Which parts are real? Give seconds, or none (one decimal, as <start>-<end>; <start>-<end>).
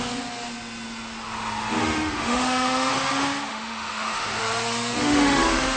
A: 0.0-1.8; 2.9-3.5; 4.4-5.0